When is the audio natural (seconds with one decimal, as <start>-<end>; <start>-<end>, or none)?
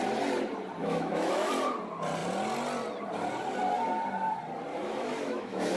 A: 0.0-0.8; 1.5-4.7